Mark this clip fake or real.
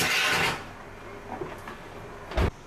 real